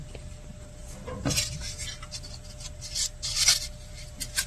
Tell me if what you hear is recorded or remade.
recorded